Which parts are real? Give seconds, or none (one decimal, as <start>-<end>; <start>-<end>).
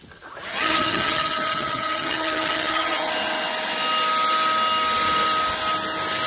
0.0-0.5; 3.1-6.3